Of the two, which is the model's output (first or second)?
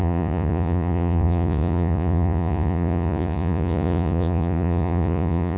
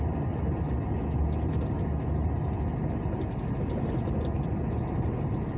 first